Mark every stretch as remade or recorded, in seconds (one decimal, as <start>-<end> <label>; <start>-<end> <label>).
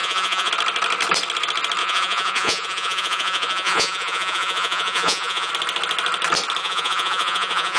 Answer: 0.0-0.5 remade; 0.5-1.8 recorded; 1.8-5.5 remade; 5.5-6.6 recorded; 6.6-7.8 remade